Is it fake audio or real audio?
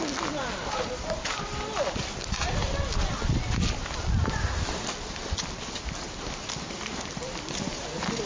real